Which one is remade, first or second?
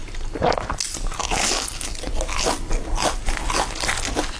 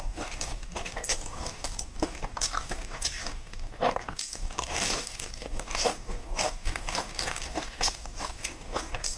second